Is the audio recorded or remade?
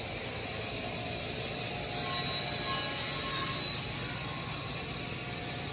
recorded